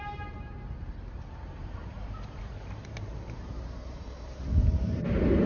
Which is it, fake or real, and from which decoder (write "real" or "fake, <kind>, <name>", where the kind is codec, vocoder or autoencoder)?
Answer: fake, vocoder, BigVGAN v2